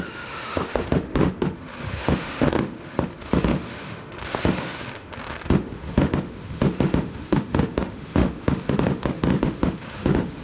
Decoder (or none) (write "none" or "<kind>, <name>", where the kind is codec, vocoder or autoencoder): autoencoder, DAC-VAE